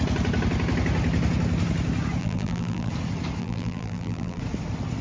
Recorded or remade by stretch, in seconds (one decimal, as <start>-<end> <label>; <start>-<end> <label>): 0.0-2.2 recorded; 2.2-2.9 remade; 2.9-3.4 recorded; 3.4-4.4 remade; 4.4-5.0 recorded